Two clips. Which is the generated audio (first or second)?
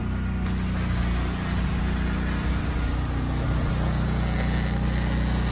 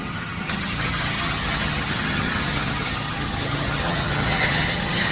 second